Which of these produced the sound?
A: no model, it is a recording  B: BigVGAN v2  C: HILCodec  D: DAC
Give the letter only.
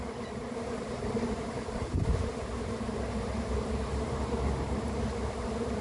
B